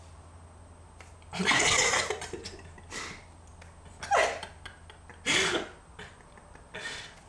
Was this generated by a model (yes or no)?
no